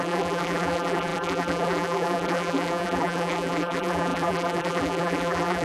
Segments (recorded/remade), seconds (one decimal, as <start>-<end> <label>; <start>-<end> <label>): 0.0-5.6 remade